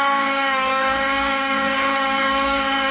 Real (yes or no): no